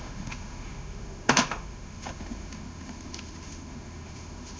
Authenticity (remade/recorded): remade